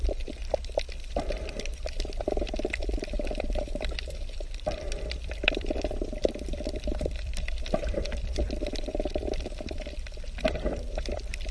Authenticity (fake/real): fake